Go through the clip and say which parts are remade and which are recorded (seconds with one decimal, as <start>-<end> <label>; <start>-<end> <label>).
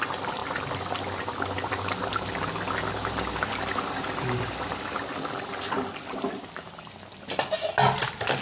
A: 0.0-8.4 recorded